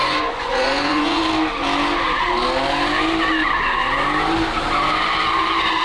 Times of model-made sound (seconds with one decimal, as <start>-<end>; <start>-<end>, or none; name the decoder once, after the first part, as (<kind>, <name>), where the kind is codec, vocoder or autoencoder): 0.0-1.2 (vocoder, Vocos)

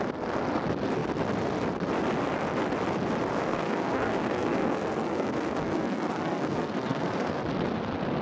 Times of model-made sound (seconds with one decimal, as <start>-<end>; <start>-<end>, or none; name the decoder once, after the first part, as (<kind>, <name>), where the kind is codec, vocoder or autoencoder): 3.3-7.4 (codec, SNAC)

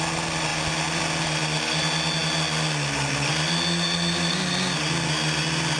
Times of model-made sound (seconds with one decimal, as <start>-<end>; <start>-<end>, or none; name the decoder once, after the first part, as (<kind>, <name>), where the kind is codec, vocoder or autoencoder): none